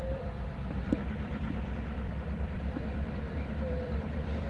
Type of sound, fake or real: fake